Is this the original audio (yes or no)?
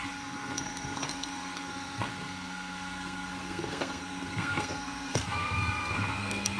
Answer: no